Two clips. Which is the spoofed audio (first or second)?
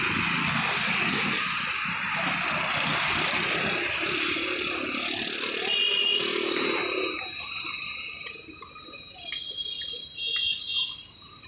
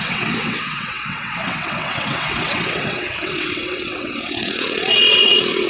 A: second